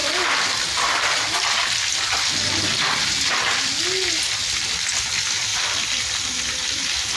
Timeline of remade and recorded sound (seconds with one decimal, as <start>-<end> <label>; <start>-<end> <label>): 0.0-7.2 recorded